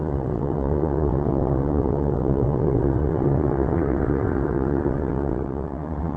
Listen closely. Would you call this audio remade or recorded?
remade